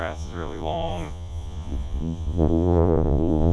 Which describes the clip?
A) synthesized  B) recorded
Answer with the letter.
A